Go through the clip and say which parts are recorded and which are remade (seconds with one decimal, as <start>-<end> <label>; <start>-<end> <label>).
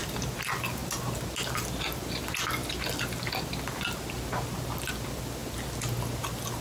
0.0-6.6 recorded